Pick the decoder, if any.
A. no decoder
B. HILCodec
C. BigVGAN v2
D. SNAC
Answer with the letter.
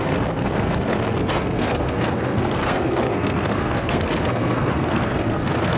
D